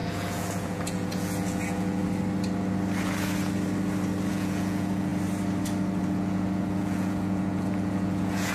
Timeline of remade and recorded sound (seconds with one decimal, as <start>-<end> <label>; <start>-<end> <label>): 0.0-2.0 remade; 2.0-4.3 recorded; 4.3-5.1 remade; 5.1-6.0 recorded; 6.0-8.5 remade